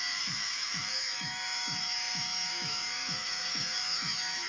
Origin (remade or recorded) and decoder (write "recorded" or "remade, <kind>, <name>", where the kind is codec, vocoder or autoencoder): remade, autoencoder, DAC-VAE